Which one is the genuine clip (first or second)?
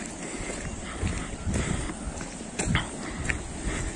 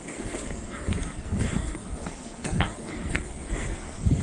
first